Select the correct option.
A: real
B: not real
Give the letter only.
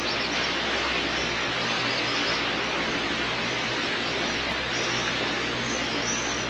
A